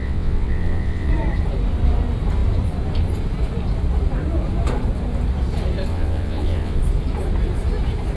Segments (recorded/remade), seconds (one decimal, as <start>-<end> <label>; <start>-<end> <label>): 0.0-1.1 remade; 1.1-5.9 recorded; 5.9-6.8 remade; 6.8-8.2 recorded